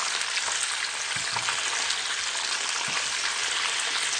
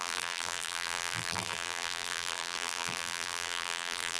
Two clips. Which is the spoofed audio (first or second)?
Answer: second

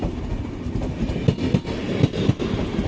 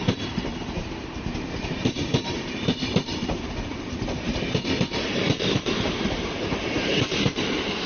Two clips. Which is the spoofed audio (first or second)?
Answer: second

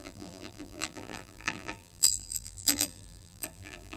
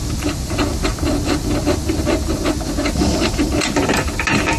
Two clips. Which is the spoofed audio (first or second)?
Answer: first